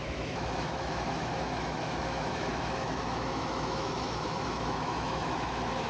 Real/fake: fake